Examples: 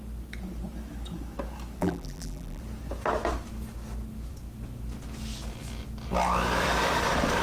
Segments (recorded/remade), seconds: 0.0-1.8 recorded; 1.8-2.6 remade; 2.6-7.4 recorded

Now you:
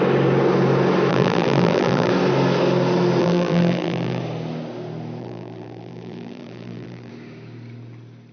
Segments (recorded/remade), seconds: 0.0-1.1 recorded; 1.1-2.1 remade; 2.1-3.2 recorded; 3.2-4.2 remade; 4.2-5.2 recorded; 5.2-7.1 remade; 7.1-8.3 recorded

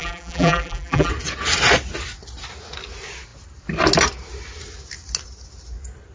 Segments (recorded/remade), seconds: 0.0-1.1 remade; 1.1-6.1 recorded